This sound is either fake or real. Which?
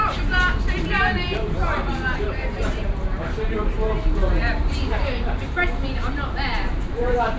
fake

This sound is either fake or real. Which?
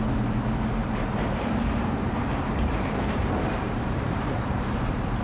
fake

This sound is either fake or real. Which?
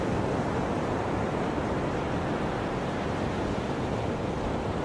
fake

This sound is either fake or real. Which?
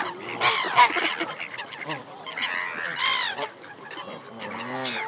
fake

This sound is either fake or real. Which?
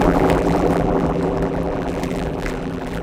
fake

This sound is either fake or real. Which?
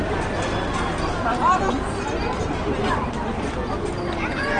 real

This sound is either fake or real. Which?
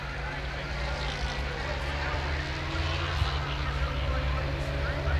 real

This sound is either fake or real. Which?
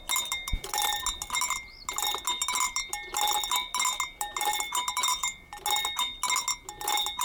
real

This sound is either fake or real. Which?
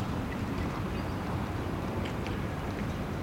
fake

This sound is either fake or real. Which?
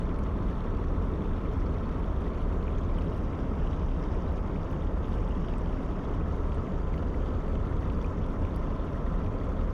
real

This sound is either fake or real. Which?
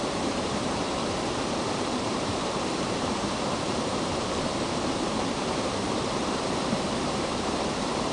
fake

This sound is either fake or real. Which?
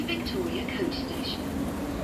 real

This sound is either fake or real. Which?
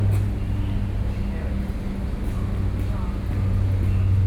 real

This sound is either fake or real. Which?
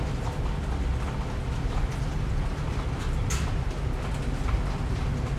real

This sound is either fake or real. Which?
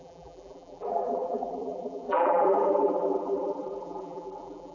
fake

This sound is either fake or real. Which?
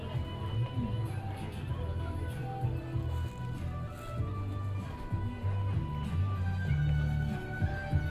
real